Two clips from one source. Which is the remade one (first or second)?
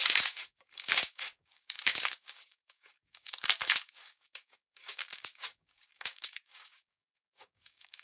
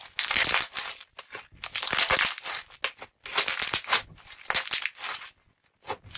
first